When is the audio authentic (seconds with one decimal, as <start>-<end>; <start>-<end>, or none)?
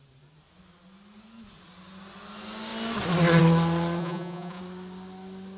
0.0-4.0; 4.6-5.6